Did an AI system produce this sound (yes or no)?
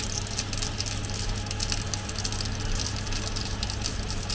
no